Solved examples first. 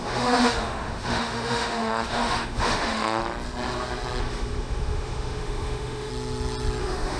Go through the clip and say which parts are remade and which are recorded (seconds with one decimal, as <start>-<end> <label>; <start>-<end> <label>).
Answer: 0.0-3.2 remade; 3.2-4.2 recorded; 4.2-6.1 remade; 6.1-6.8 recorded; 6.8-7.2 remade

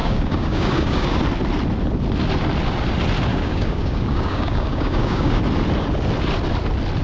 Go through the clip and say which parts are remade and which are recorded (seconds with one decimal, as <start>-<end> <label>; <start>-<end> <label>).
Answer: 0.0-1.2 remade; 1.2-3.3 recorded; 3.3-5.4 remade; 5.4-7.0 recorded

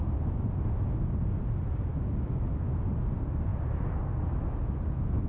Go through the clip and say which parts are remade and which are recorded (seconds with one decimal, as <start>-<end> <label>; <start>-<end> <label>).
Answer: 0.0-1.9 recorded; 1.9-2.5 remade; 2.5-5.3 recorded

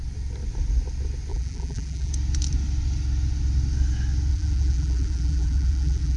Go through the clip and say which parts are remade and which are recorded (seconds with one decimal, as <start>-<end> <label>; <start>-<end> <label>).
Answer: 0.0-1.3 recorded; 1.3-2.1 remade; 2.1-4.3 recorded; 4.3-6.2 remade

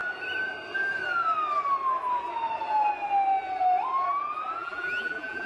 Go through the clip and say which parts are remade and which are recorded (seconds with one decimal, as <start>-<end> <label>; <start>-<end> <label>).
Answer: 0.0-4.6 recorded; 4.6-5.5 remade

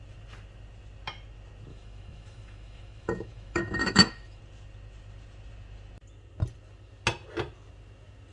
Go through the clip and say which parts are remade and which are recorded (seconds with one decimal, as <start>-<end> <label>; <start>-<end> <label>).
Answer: 0.0-1.7 recorded; 1.7-4.4 remade; 4.4-8.3 recorded

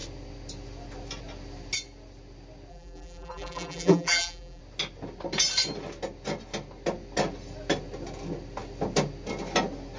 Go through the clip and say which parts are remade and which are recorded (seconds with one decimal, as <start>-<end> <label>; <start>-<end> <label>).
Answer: 0.0-2.7 recorded; 2.7-4.6 remade; 4.6-10.0 recorded

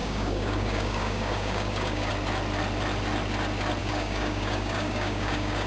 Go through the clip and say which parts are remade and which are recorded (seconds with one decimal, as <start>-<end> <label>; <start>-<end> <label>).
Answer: 0.0-2.1 remade; 2.1-3.8 recorded; 3.8-5.7 remade